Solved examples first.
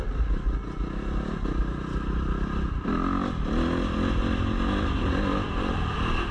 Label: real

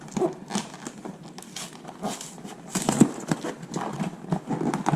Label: real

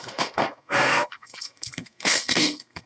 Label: fake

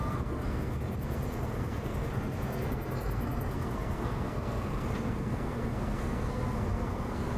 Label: fake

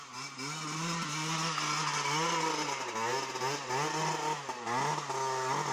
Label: real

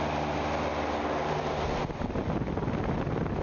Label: real